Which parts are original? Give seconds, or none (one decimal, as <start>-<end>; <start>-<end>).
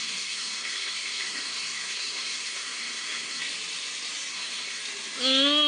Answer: 3.4-4.3; 4.8-5.7